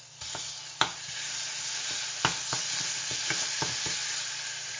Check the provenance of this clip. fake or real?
real